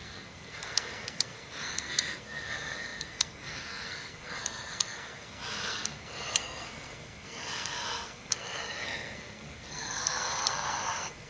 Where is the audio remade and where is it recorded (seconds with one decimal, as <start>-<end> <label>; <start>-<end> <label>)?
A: 0.0-11.3 remade